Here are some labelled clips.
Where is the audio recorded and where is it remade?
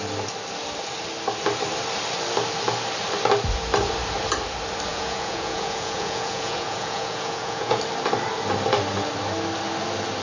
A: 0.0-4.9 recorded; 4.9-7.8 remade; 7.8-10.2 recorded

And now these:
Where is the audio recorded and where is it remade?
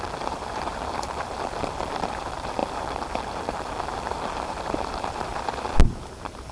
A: 0.0-5.3 remade; 5.3-5.8 recorded; 5.8-6.5 remade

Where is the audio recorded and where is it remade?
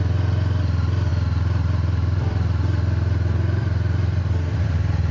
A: 0.0-1.1 recorded; 1.1-4.2 remade; 4.2-5.1 recorded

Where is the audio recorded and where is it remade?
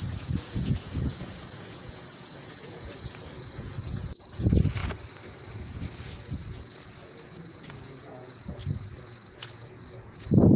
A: 0.0-4.8 remade; 4.8-5.5 recorded; 5.5-10.6 remade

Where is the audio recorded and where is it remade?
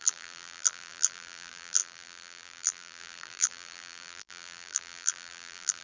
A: 0.0-5.8 remade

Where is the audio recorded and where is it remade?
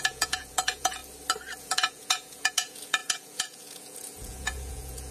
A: 0.0-1.0 remade; 1.0-1.6 recorded; 1.6-5.1 remade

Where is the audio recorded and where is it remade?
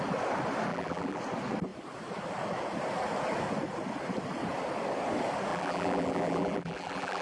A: 0.0-0.7 recorded; 0.7-1.2 remade; 1.2-5.5 recorded; 5.5-7.2 remade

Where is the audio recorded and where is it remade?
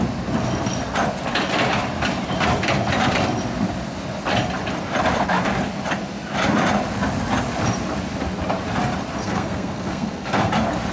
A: 0.0-9.2 recorded; 9.2-10.5 remade; 10.5-10.9 recorded